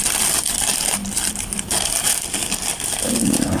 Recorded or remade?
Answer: remade